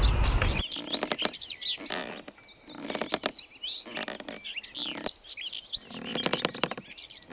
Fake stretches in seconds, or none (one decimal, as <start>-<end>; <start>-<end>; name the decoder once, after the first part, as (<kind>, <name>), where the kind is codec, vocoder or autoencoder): none